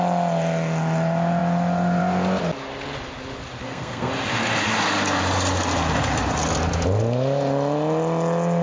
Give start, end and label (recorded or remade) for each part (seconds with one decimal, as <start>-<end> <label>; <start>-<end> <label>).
0.0-3.6 recorded; 3.6-4.1 remade; 4.1-8.6 recorded